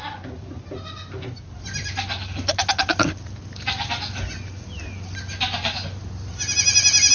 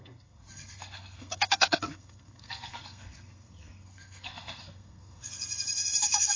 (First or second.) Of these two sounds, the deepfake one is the second